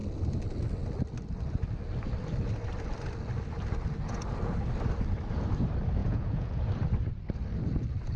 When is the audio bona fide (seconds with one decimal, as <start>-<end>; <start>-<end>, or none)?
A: 0.0-6.0; 6.6-8.2